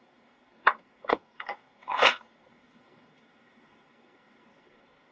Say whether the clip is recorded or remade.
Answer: remade